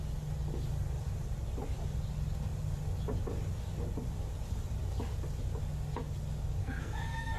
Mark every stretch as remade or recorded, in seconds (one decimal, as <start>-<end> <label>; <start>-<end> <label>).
0.0-6.6 recorded; 6.6-7.4 remade